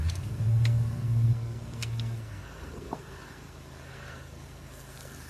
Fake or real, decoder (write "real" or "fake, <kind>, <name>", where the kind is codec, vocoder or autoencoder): fake, codec, SNAC